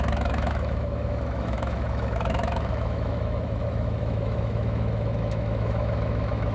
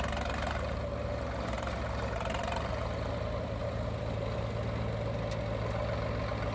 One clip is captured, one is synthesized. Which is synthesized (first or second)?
first